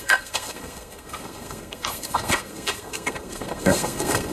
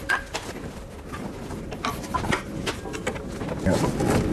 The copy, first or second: first